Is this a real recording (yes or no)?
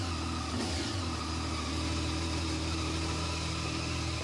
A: yes